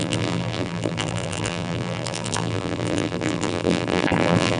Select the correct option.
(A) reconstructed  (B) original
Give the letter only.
A